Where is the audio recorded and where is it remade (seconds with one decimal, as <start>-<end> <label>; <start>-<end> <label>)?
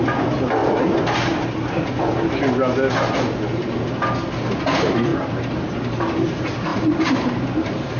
0.0-6.7 recorded; 6.7-8.0 remade